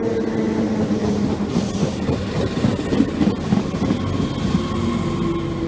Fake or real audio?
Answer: real